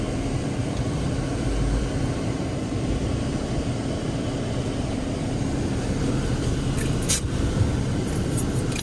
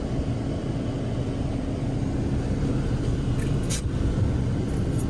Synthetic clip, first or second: first